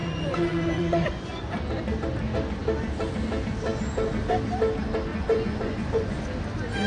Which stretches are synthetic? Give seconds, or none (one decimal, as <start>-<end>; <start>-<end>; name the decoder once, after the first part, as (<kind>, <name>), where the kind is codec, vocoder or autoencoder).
0.0-1.4 (vocoder, Vocos); 5.1-6.2